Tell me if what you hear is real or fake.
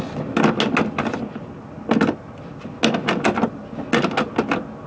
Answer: real